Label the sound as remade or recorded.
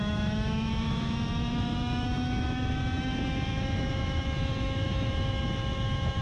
remade